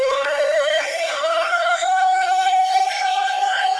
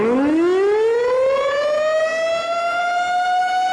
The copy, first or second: first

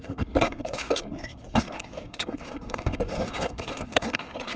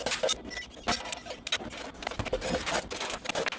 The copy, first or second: first